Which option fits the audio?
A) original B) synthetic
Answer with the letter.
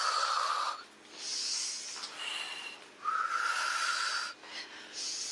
A